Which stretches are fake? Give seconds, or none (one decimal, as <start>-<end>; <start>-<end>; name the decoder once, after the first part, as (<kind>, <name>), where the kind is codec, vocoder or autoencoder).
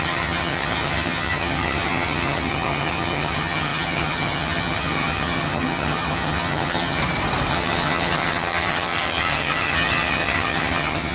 0.0-7.0 (vocoder, HiFi-GAN); 7.5-11.1